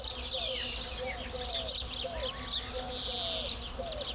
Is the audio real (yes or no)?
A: yes